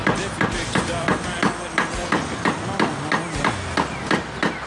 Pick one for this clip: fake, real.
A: real